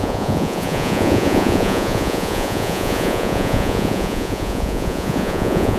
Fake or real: fake